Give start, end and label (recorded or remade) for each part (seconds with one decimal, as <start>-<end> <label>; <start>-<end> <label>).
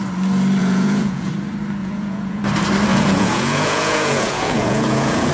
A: 0.0-0.6 recorded; 0.6-1.3 remade; 1.3-1.8 recorded; 1.8-2.4 remade; 2.4-2.9 recorded; 2.9-5.3 remade